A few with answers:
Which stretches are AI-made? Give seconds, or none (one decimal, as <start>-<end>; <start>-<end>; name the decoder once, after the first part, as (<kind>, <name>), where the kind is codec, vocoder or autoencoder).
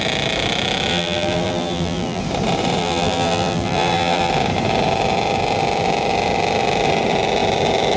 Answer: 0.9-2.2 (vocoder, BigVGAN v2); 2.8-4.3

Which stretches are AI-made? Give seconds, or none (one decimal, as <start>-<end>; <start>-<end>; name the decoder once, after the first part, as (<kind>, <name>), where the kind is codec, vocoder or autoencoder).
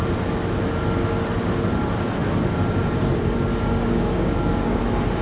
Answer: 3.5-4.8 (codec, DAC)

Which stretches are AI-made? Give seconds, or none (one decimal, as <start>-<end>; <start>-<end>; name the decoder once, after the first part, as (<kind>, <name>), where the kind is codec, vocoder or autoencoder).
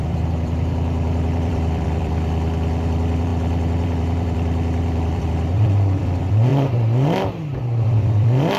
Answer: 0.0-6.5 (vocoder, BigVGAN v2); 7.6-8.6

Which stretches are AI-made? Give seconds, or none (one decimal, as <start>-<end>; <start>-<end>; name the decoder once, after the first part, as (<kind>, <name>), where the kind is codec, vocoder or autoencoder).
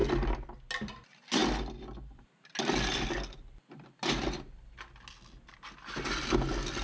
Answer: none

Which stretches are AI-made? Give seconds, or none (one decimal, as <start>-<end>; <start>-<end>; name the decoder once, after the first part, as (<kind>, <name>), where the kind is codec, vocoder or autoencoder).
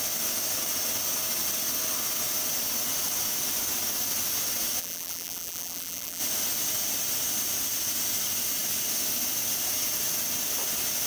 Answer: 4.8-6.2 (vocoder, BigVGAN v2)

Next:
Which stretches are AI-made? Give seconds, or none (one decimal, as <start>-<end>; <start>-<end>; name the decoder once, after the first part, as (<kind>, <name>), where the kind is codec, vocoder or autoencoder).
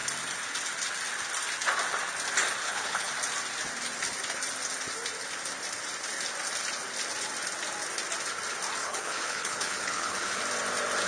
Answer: 2.6-3.1 (codec, HILCodec); 8.8-10.4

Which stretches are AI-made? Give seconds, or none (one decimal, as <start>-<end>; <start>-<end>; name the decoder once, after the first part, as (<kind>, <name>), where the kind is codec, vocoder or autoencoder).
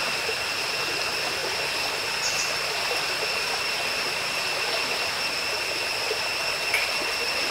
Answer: none